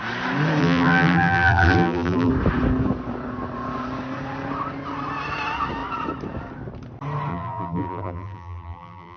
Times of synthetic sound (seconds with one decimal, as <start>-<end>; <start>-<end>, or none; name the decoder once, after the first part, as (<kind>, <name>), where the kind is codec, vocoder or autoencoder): 0.6-2.3 (vocoder, BigVGAN v2); 7.3-9.2